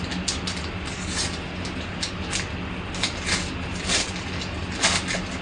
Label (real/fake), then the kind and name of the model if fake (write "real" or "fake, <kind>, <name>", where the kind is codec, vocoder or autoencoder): real